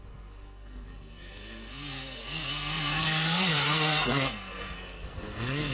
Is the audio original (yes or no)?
no